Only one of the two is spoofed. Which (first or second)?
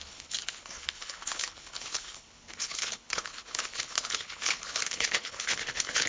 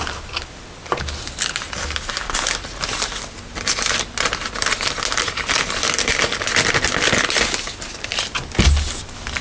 first